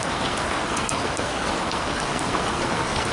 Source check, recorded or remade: remade